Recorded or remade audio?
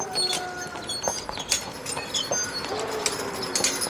recorded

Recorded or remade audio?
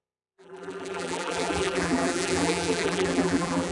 remade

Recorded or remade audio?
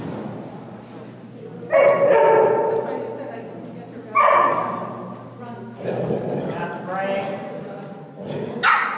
recorded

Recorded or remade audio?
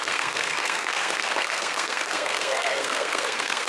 remade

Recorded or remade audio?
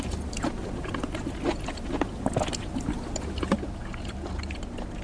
recorded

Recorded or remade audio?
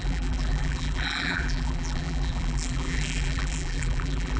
remade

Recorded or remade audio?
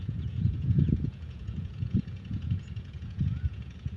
remade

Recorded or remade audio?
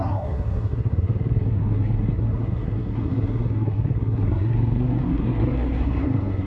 remade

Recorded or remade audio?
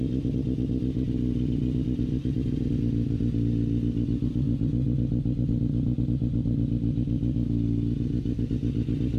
recorded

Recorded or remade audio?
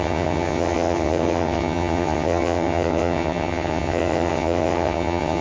remade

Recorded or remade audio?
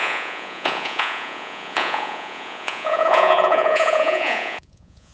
remade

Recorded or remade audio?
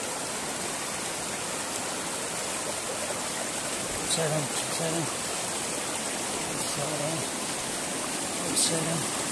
recorded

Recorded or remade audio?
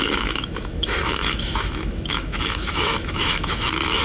remade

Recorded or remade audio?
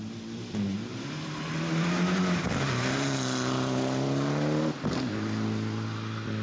recorded